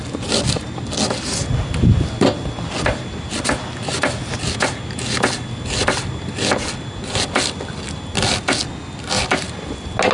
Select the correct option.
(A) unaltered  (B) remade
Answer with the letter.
A